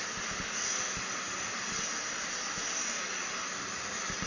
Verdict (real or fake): real